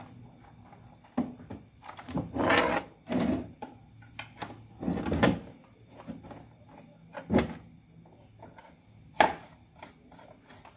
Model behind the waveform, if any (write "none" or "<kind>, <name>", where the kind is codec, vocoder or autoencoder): none